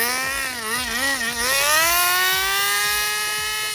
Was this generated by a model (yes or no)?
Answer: no